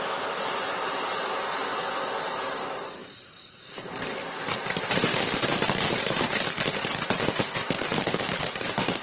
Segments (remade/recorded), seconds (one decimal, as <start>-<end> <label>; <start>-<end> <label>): 0.0-1.7 remade; 1.7-2.2 recorded; 2.2-9.0 remade